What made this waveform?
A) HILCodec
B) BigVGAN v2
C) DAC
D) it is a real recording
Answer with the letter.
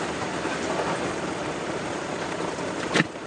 D